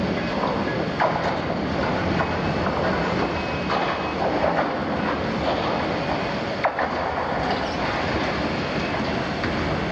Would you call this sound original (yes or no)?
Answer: yes